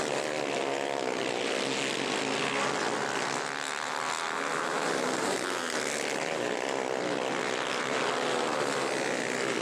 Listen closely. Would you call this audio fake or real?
real